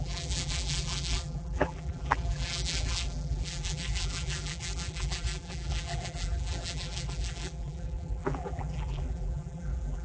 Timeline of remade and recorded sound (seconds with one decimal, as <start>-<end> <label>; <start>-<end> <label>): 0.0-10.0 remade